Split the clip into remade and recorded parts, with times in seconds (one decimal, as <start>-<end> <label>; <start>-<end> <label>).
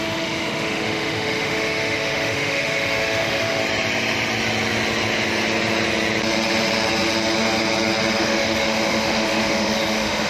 0.0-3.6 remade; 3.6-8.2 recorded; 8.2-10.3 remade